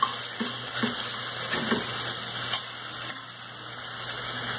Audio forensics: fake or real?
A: real